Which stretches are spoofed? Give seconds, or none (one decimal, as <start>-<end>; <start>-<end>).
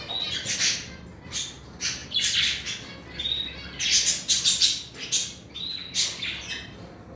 none